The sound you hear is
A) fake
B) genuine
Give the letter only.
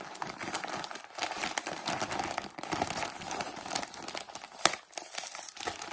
B